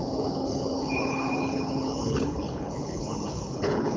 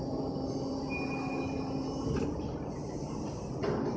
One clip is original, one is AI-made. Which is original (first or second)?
second